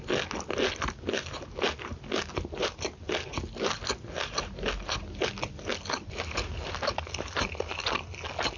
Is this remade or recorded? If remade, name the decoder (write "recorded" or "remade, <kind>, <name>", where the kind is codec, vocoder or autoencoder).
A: recorded